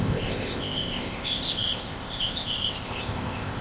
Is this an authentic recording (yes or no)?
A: no